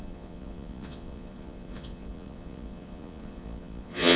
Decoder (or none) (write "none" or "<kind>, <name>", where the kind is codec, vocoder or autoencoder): vocoder, Vocos